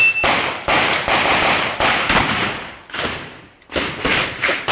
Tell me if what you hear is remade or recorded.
recorded